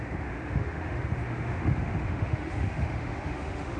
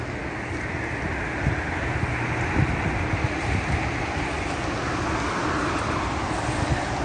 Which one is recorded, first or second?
second